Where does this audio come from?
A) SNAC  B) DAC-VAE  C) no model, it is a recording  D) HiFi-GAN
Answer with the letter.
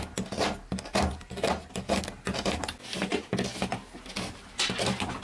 C